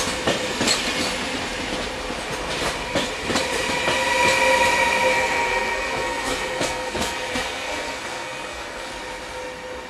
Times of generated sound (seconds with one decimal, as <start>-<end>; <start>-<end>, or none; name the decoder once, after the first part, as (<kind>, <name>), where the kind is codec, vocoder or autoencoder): 5.1-8.9 (codec, SNAC)